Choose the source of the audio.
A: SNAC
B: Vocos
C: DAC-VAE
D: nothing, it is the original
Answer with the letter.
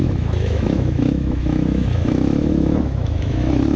C